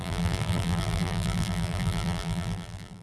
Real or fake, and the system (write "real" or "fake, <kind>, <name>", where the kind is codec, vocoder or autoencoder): fake, vocoder, BigVGAN v2